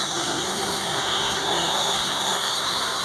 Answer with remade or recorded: remade